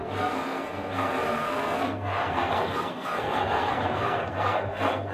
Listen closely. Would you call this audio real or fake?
fake